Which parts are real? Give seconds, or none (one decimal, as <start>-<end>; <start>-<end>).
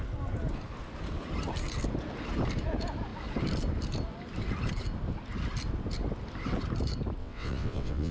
0.0-7.2